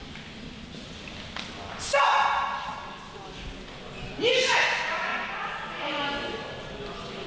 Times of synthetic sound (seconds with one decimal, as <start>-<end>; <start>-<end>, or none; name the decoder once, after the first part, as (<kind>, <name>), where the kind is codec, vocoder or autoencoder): none